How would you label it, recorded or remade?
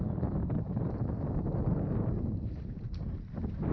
recorded